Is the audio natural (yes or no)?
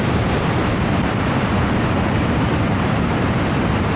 no